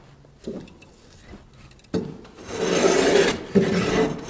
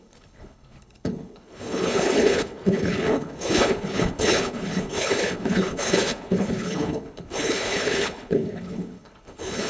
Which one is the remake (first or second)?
second